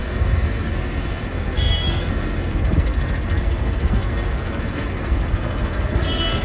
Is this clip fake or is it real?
fake